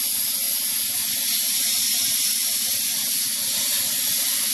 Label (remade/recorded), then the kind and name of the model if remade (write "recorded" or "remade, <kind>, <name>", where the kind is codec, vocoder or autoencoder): recorded